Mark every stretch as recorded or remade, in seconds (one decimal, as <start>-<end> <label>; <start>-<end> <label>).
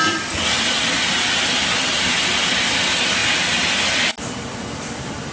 0.0-5.3 recorded